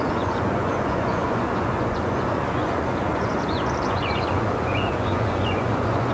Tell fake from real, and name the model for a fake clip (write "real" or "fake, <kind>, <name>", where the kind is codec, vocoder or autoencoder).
fake, vocoder, Vocos